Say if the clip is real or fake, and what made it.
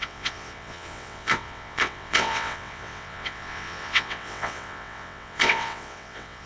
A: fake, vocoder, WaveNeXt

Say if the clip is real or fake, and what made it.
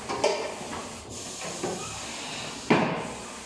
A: real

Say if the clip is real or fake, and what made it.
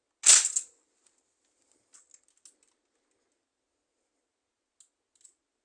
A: real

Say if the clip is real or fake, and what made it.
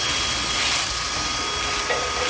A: real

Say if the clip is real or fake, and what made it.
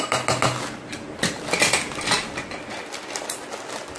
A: real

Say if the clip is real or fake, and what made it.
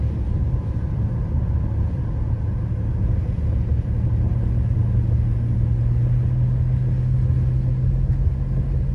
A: real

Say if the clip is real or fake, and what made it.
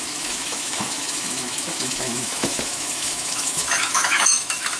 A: fake, autoencoder, DAC-VAE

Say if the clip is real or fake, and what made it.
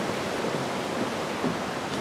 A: real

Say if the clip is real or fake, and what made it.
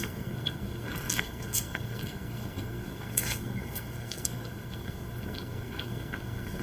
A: fake, codec, SNAC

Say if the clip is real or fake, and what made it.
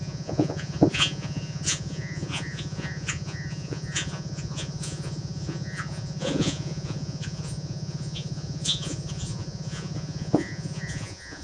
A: fake, vocoder, Vocos